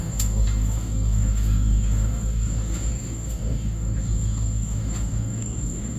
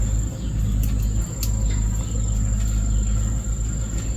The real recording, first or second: second